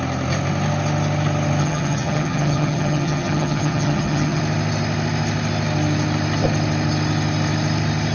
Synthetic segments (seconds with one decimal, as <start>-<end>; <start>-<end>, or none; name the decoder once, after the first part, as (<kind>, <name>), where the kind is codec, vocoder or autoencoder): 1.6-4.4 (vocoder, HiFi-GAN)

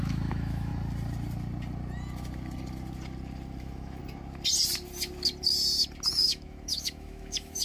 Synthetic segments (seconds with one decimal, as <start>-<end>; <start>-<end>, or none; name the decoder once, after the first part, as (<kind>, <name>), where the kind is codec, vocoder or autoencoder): 0.0-0.7 (autoencoder, DAC-VAE); 3.6-4.0; 6.1-7.6

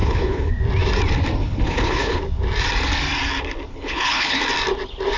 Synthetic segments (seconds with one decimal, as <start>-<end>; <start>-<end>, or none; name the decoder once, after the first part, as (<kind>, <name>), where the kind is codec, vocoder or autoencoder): 0.0-0.5 (codec, HILCodec); 1.4-2.2; 3.7-4.4

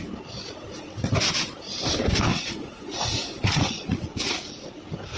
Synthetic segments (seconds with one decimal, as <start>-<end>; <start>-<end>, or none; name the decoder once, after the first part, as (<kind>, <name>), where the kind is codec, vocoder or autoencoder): 2.3-4.8 (vocoder, Vocos)